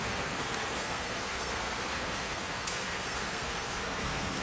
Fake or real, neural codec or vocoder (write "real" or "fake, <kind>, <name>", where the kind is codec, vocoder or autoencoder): fake, codec, SNAC